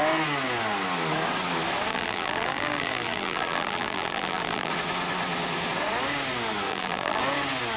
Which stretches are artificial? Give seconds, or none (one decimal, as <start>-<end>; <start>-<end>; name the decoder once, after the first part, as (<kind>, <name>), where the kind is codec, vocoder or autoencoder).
1.9-4.7 (vocoder, BigVGAN v2); 6.7-7.2